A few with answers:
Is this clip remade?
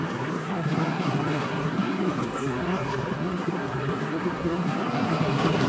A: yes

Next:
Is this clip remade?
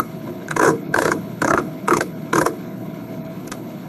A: yes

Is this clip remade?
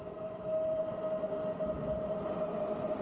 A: no